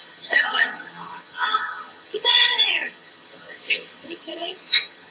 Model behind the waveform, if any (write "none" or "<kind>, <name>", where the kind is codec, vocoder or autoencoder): vocoder, HiFi-GAN